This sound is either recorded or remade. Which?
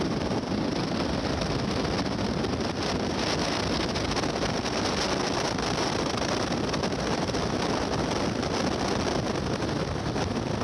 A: recorded